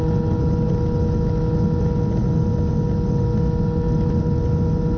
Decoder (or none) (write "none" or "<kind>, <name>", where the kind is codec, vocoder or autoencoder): none